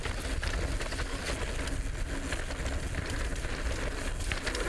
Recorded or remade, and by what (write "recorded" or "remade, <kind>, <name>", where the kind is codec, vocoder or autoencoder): recorded